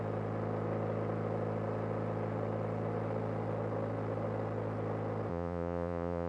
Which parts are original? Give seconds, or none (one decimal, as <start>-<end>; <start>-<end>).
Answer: 0.0-5.3